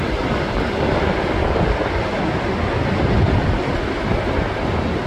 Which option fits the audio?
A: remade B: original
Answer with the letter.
B